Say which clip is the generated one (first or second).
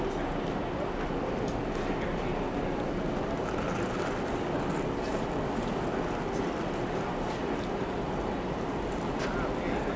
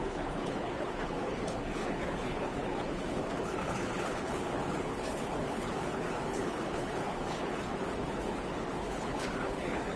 second